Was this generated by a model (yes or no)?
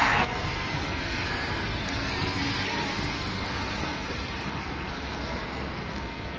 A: yes